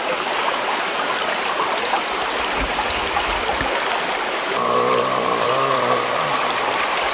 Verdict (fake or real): fake